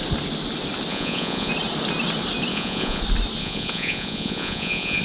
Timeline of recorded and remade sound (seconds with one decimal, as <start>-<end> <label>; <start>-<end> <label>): 0.0-0.9 recorded; 0.9-1.5 remade; 1.5-2.5 recorded; 2.5-3.0 remade; 3.0-3.4 recorded; 3.4-5.0 remade